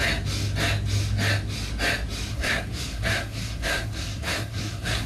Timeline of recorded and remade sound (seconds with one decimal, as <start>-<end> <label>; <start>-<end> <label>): 0.0-2.3 recorded; 2.3-5.1 remade